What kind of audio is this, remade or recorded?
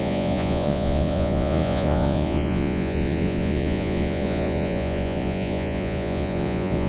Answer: remade